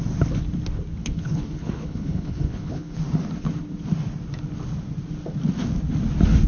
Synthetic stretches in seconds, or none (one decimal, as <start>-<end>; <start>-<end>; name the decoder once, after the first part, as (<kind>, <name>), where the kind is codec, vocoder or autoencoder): 1.0-3.0 (codec, HILCodec)